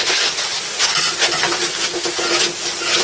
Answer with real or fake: real